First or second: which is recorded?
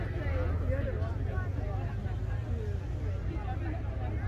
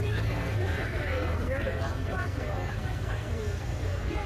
first